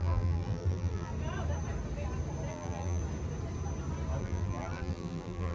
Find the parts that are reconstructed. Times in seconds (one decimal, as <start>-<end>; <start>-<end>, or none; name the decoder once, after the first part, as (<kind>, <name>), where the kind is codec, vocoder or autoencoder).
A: 0.0-1.1 (vocoder, BigVGAN v2); 2.5-3.0; 4.2-5.5